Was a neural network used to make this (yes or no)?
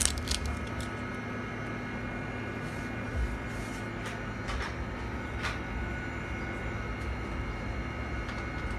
no